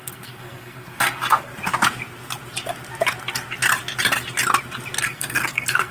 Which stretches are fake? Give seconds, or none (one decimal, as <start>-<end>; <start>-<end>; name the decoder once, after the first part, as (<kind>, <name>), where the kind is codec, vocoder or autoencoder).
0.0-1.5 (codec, SNAC); 5.0-5.9